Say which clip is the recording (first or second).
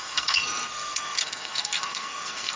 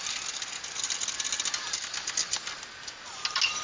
second